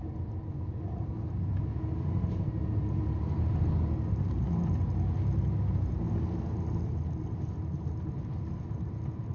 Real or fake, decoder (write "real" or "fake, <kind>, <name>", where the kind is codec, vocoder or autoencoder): real